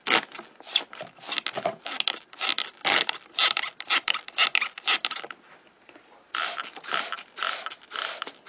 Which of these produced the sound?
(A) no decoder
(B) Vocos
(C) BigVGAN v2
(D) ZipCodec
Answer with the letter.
A